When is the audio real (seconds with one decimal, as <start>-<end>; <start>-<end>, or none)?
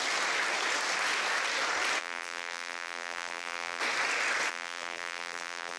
0.0-2.0; 3.8-4.5